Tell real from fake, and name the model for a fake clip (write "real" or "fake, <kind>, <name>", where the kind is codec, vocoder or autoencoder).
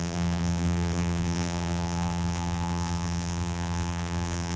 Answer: fake, vocoder, BigVGAN v2